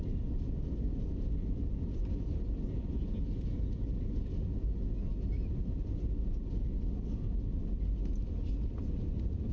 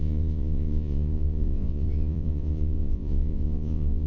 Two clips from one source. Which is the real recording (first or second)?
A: first